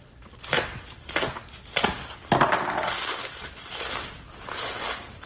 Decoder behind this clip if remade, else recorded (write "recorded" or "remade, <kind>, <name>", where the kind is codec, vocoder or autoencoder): recorded